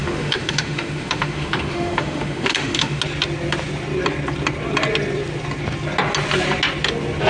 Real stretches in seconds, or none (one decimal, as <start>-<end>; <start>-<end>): 3.0-7.3